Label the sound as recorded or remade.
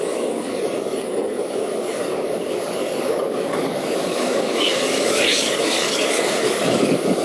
remade